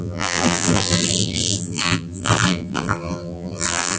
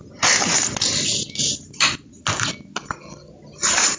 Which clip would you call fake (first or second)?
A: first